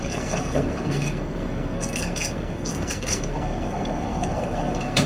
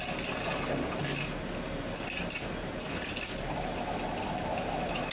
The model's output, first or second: first